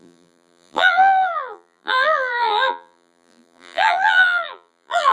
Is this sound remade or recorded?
remade